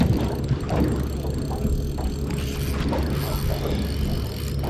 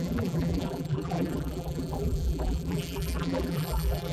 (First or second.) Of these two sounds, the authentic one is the first